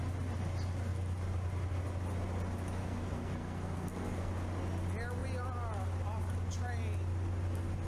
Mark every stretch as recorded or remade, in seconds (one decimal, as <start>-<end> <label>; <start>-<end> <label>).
0.0-2.8 recorded; 2.8-4.3 remade; 4.3-7.9 recorded